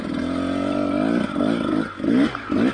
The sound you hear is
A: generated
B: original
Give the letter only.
B